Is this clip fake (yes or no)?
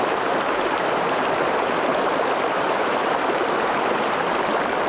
yes